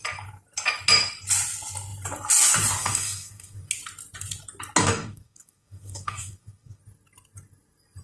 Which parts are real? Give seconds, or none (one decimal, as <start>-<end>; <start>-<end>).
0.0-2.8; 3.7-4.8; 6.8-8.0

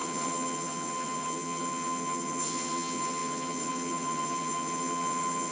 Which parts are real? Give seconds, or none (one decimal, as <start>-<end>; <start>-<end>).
none

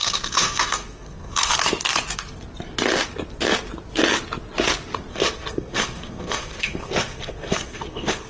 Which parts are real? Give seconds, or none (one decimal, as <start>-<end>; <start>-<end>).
1.5-5.1

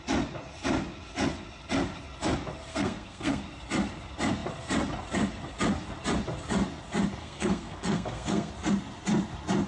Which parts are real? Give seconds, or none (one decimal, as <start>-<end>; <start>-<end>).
0.0-2.7; 3.4-7.2; 8.5-9.7

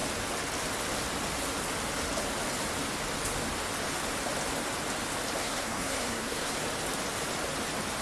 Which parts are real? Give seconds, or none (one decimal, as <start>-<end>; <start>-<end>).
0.0-5.4; 6.5-8.0

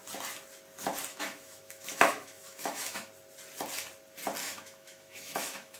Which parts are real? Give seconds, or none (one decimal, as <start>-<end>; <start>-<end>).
0.0-1.1; 3.1-4.4

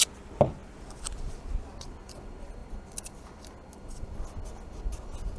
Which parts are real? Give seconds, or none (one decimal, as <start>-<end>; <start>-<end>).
0.0-5.4